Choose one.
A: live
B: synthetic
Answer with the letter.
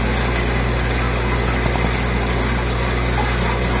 A